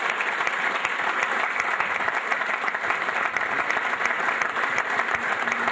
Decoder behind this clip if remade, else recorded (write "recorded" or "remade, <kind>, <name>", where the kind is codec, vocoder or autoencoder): recorded